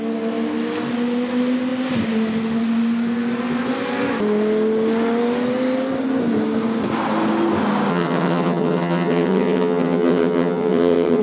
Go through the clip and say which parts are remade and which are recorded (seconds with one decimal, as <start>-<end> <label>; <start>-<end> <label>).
0.0-7.9 recorded; 7.9-11.2 remade